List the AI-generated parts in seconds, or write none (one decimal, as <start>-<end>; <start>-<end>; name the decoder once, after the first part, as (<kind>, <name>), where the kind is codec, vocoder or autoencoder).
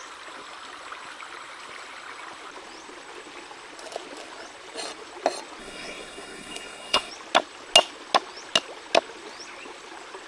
5.6-7.1 (codec, SNAC)